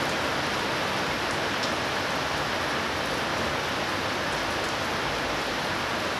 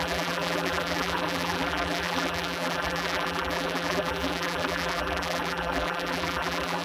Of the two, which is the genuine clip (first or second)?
first